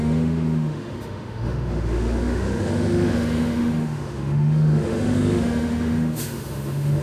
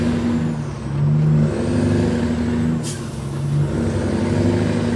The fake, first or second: first